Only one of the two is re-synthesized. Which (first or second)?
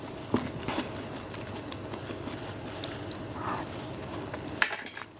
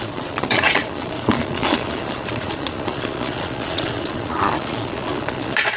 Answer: second